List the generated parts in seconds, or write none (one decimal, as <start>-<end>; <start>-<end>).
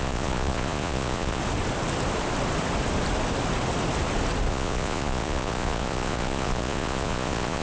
0.0-1.4; 4.5-7.6